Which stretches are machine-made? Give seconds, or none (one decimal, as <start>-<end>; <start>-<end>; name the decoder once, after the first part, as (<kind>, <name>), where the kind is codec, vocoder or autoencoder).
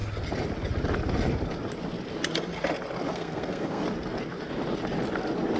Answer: 3.1-3.8 (codec, SNAC)